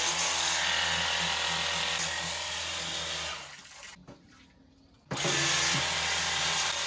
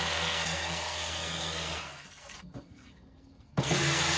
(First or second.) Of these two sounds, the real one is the first